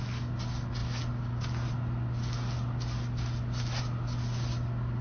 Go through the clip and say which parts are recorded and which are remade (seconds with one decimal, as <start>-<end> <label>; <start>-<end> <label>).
0.0-5.0 recorded

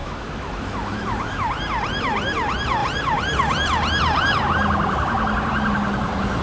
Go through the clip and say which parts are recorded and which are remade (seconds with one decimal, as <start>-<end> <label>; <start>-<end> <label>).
0.0-1.5 remade; 1.5-6.4 recorded

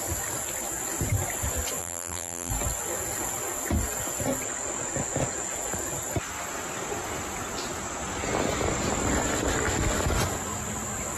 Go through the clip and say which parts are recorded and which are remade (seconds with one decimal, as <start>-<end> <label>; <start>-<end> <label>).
0.0-1.8 recorded; 1.8-2.5 remade; 2.5-11.2 recorded

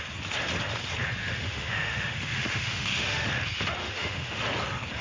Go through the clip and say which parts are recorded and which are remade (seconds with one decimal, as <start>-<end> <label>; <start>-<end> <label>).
0.0-1.2 recorded; 1.2-3.3 remade; 3.3-3.8 recorded; 3.8-4.4 remade; 4.4-5.0 recorded